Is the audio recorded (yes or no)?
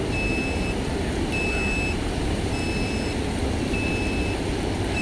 yes